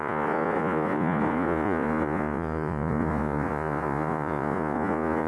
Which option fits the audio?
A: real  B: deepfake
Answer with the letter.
B